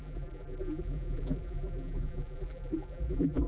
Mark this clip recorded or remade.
remade